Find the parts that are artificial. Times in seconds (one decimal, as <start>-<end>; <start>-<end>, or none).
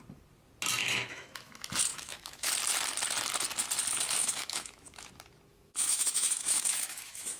0.8-1.5; 1.9-2.5; 4.2-5.1; 5.5-7.4